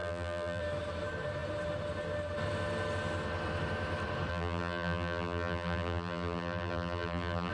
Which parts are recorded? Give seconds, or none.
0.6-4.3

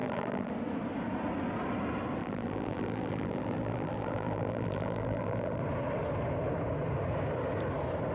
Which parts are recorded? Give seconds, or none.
0.5-2.2; 5.6-8.1

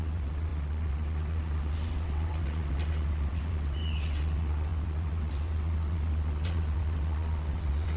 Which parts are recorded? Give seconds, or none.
none

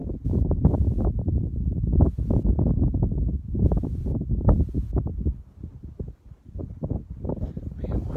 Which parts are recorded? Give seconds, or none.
0.0-8.2

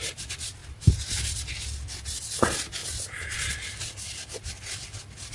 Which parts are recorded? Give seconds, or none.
0.0-5.3

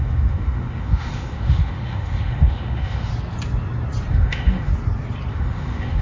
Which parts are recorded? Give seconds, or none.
3.1-4.1; 4.7-5.3